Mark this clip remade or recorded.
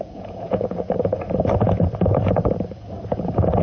remade